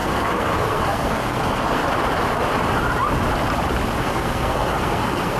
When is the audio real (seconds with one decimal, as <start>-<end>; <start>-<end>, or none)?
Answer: 1.8-4.0